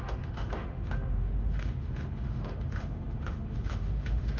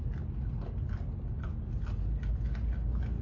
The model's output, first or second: first